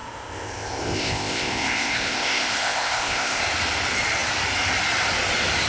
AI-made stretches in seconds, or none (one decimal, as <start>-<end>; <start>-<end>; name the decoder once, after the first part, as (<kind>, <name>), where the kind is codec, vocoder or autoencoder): 0.0-3.4 (codec, ZipCodec)